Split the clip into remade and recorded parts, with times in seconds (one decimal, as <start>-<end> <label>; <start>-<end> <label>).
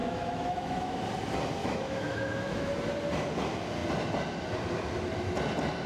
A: 0.0-1.0 remade; 1.0-1.6 recorded; 1.6-2.7 remade; 2.7-5.9 recorded